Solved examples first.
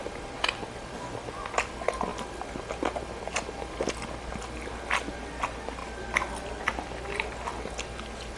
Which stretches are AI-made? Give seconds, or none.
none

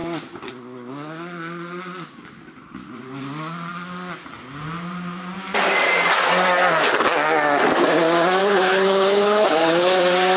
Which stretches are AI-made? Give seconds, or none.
8.4-10.0 (codec, HILCodec)

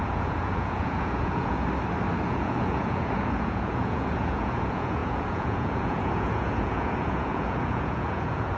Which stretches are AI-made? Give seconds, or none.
0.0-1.6 (vocoder, Vocos); 2.3-8.6